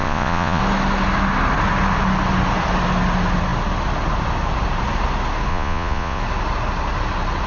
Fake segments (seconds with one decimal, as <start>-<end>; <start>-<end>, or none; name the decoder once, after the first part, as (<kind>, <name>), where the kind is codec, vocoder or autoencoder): 0.0-0.6 (vocoder, Vocos); 5.5-6.2